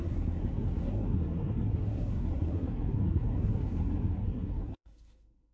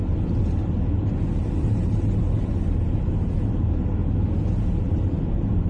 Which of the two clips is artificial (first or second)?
first